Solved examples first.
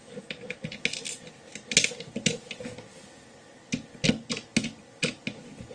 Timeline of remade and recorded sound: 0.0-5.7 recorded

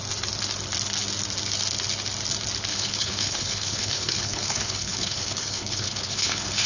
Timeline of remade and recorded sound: 0.0-2.7 recorded; 2.7-6.7 remade